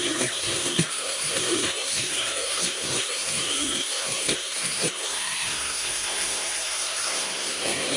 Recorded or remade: remade